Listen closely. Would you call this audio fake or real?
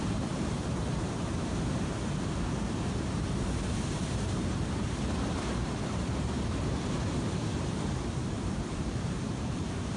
fake